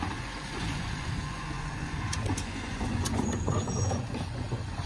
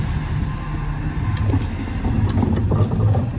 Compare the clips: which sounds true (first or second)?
second